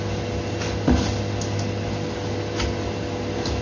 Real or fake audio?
real